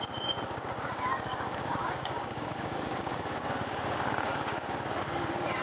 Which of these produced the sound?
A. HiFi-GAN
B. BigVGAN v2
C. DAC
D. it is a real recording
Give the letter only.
C